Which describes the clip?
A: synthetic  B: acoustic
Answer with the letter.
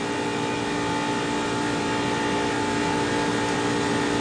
B